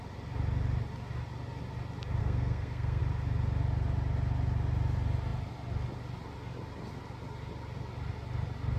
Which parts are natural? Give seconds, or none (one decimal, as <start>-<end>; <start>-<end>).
0.0-2.2; 3.0-8.8